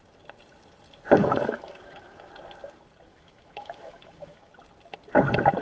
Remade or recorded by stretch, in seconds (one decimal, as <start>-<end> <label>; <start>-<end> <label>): 0.0-1.2 recorded; 1.2-2.3 remade; 2.3-3.1 recorded; 3.1-4.5 remade; 4.5-5.6 recorded